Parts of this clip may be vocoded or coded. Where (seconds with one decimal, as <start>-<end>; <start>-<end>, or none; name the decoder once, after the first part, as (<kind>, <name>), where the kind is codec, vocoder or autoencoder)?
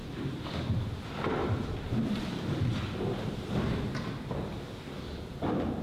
0.0-0.5 (vocoder, BigVGAN v2); 1.4-4.9